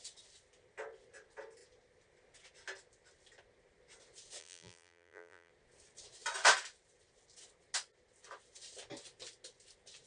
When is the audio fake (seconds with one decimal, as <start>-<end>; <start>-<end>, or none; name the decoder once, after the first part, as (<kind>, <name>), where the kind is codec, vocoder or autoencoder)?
4.4-5.5 (vocoder, BigVGAN v2)